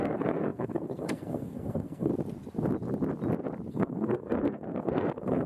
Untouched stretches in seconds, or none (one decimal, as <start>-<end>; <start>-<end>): 2.1-3.7